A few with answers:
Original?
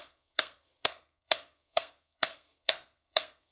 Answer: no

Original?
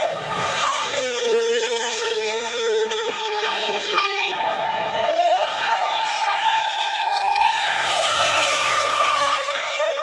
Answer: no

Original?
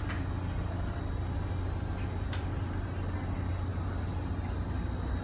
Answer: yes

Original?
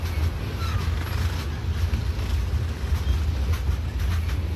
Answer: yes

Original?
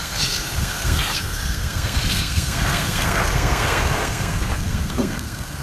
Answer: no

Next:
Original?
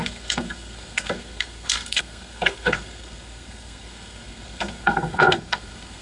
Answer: no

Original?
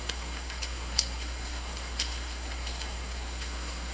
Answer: no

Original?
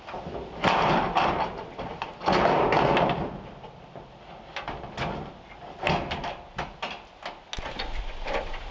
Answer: yes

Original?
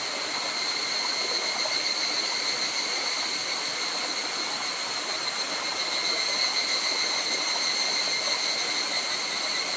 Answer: yes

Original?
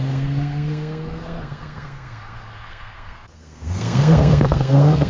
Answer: no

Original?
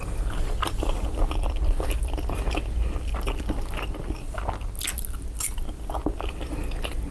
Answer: yes